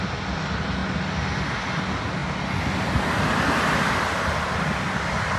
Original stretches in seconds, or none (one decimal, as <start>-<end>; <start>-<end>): 0.0-5.4